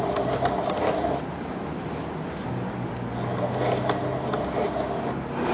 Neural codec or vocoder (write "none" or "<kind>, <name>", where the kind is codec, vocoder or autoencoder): none